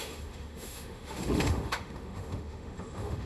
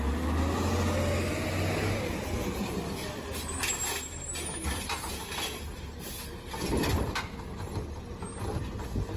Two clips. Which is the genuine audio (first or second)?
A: second